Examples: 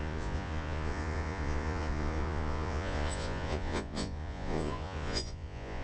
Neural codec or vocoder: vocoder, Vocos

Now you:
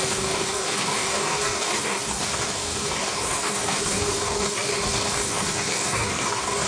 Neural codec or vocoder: codec, DAC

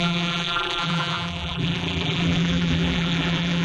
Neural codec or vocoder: vocoder, BigVGAN v2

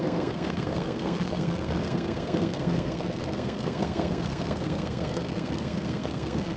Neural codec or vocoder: codec, SNAC